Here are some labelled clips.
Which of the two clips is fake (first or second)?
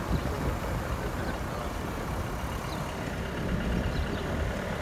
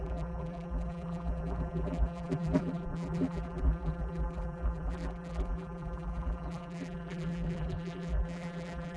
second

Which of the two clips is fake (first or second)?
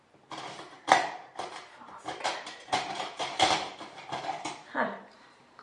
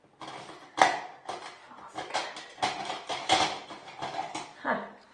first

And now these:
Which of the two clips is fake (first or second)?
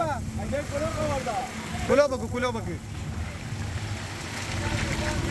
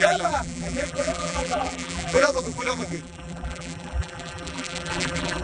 second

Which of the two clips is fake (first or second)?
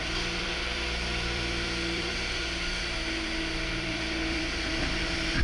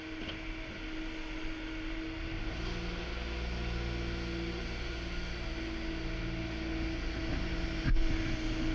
first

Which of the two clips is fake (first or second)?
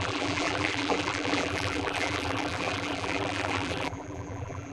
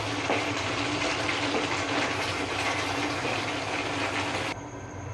first